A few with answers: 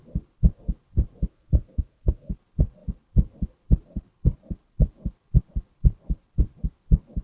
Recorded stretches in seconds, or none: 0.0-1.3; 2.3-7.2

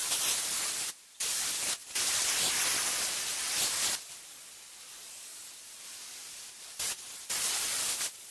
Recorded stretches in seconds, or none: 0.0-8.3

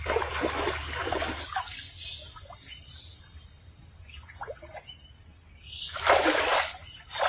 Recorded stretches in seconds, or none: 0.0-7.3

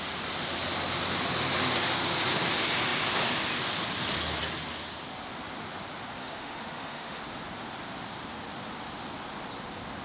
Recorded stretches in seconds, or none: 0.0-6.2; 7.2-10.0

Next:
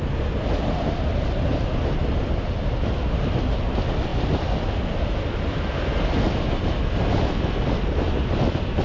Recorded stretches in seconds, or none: 0.0-8.8

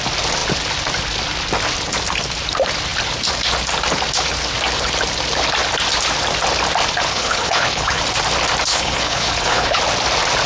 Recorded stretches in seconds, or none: 0.0-7.1; 8.0-8.7; 9.8-10.5